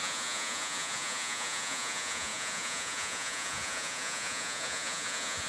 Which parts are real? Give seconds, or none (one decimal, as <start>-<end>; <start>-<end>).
none